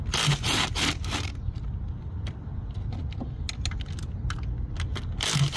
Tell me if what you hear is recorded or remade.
recorded